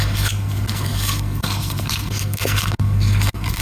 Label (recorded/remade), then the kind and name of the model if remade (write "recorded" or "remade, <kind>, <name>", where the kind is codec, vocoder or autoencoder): remade, codec, SNAC